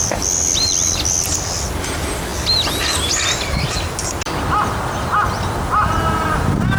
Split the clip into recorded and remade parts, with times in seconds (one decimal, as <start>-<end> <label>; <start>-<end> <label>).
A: 0.0-6.8 recorded

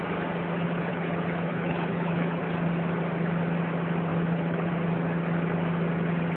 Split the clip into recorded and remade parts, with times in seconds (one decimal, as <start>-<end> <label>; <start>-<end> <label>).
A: 0.0-0.9 recorded; 0.9-2.4 remade; 2.4-4.1 recorded; 4.1-4.7 remade; 4.7-6.4 recorded

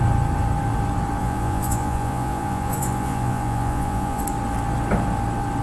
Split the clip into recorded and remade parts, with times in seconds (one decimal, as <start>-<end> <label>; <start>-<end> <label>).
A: 0.0-1.2 recorded; 1.2-4.2 remade; 4.2-5.6 recorded

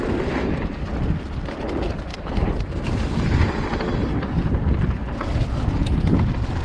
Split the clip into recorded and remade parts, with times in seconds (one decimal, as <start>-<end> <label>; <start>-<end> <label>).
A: 0.0-2.1 recorded; 2.1-2.7 remade; 2.7-6.6 recorded

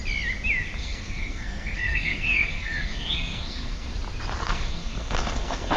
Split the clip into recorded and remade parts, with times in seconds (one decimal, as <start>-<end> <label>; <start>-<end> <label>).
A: 0.0-0.8 recorded; 0.8-3.9 remade; 3.9-4.4 recorded; 4.4-5.8 remade

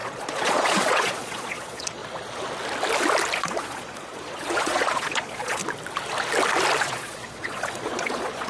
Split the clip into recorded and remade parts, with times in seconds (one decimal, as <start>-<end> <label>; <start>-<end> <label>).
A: 0.0-2.0 remade; 2.0-3.4 recorded; 3.4-5.6 remade; 5.6-6.8 recorded; 6.8-8.5 remade

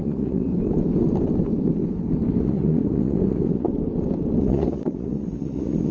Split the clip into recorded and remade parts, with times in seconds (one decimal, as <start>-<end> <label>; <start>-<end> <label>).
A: 0.0-0.5 remade; 0.5-2.4 recorded; 2.4-3.7 remade; 3.7-4.4 recorded; 4.4-5.9 remade

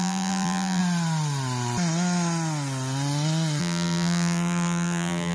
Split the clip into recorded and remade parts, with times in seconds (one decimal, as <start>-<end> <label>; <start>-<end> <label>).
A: 0.0-0.8 remade; 0.8-3.6 recorded; 3.6-5.3 remade